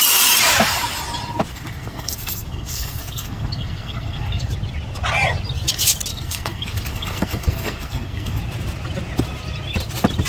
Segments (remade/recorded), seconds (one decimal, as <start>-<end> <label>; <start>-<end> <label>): 0.0-1.5 recorded; 1.5-4.5 remade; 4.5-6.1 recorded; 6.1-8.4 remade; 8.4-10.3 recorded